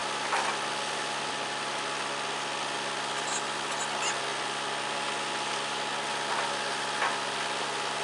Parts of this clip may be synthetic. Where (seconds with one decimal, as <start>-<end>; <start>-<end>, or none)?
none